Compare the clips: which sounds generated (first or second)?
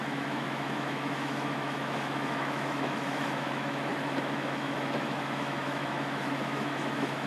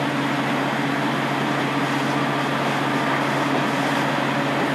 first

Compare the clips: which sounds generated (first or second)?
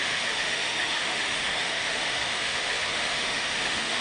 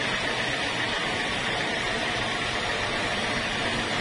first